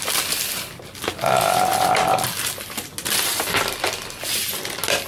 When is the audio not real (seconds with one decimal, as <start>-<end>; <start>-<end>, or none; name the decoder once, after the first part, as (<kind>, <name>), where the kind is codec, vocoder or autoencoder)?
none